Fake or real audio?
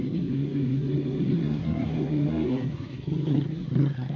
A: fake